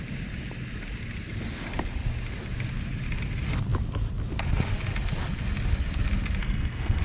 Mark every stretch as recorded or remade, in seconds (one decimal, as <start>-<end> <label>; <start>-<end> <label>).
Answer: 0.0-6.4 recorded; 6.4-7.0 remade

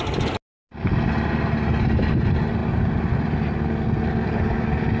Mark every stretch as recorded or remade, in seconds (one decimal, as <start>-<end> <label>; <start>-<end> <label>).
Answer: 0.0-5.0 recorded

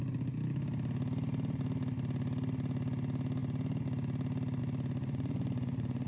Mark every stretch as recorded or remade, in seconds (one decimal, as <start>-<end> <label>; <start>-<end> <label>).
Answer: 0.0-5.0 recorded; 5.0-6.1 remade

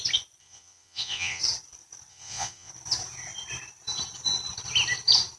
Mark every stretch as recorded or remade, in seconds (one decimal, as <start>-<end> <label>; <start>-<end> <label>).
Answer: 0.0-0.4 recorded; 0.4-1.4 remade; 1.4-2.1 recorded; 2.1-2.7 remade; 2.7-5.4 recorded

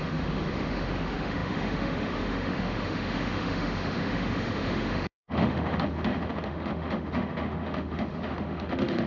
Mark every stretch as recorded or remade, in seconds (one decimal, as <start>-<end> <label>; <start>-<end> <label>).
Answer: 0.0-9.1 remade

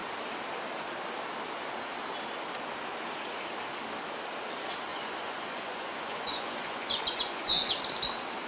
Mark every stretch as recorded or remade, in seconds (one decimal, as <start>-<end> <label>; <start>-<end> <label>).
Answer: 0.0-4.9 recorded; 4.9-7.8 remade; 7.8-8.5 recorded